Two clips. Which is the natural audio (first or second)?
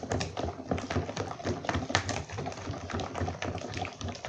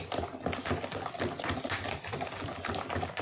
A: second